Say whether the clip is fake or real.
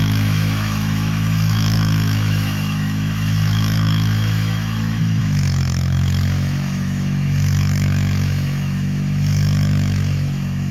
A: fake